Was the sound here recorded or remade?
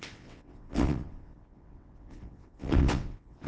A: remade